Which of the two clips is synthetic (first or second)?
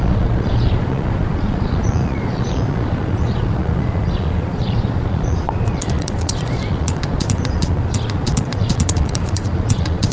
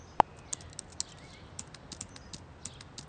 first